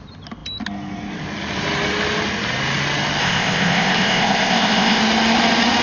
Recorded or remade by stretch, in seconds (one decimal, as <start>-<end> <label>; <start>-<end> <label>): 0.0-3.2 recorded; 3.2-5.0 remade; 5.0-5.8 recorded